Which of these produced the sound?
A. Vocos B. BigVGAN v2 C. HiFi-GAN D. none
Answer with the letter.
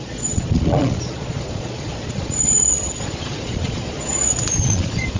A